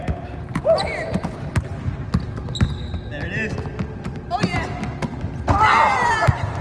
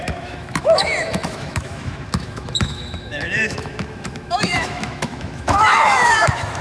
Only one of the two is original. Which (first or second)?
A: first